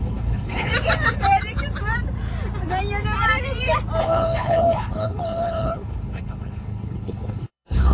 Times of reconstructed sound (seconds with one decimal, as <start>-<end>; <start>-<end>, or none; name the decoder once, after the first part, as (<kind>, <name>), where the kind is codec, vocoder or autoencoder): 0.0-0.7 (codec, HILCodec); 4.0-7.9